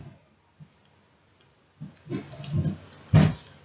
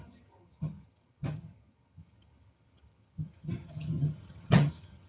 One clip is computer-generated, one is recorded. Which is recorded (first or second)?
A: first